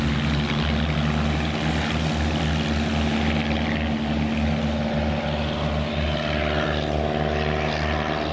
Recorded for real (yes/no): yes